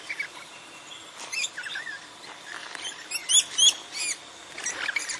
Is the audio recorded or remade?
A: recorded